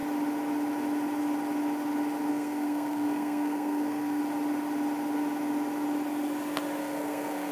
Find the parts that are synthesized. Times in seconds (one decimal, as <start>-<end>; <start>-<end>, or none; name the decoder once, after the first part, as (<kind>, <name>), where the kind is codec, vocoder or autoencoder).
2.3-4.2 (codec, SNAC); 6.8-7.5